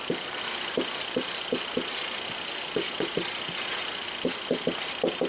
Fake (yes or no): no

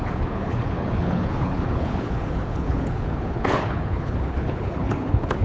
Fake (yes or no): yes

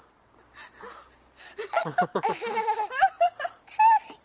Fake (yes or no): no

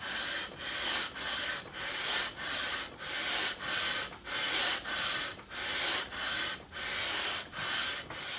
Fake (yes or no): no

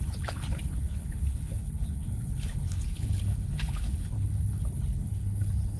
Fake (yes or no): yes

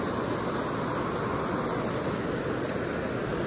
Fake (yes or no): no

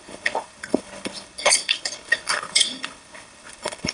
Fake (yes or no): yes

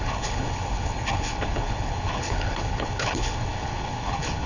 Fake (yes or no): yes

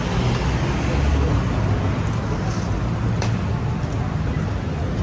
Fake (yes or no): no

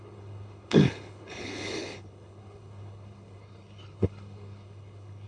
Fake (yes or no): yes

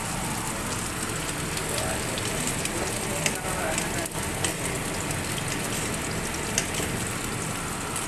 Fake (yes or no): no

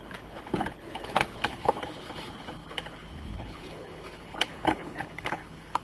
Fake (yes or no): yes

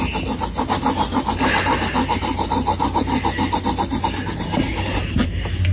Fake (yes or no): no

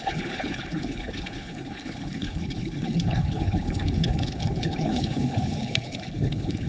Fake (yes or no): yes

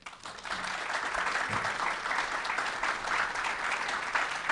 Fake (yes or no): no